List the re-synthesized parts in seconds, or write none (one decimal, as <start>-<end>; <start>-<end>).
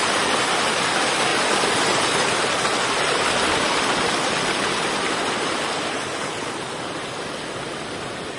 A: none